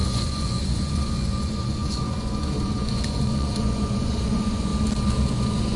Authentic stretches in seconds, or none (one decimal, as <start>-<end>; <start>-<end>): 4.7-5.3

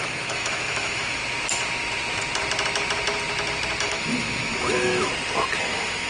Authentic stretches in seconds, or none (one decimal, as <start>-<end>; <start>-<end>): 1.2-3.8; 5.1-5.6